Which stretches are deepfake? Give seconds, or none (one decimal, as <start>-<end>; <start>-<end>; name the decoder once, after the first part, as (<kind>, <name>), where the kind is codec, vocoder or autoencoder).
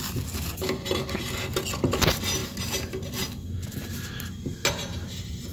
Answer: none